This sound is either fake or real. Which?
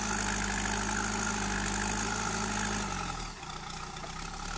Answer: real